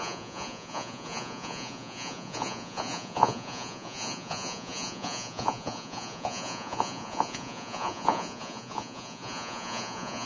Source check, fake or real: fake